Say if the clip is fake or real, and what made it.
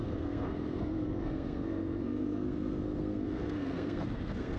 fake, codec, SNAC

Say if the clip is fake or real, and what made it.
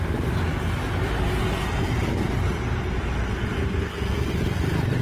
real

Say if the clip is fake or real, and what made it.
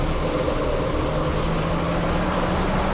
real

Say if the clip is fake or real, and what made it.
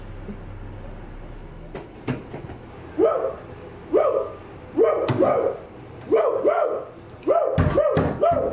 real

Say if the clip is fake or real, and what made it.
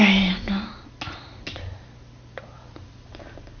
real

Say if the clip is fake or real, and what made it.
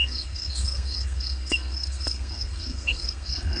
fake, codec, SNAC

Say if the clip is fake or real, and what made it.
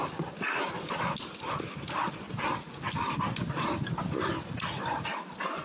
real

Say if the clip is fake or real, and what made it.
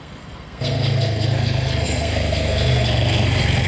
fake, codec, SNAC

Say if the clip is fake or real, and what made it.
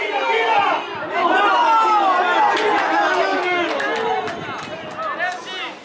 real